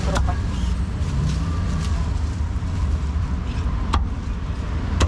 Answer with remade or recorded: recorded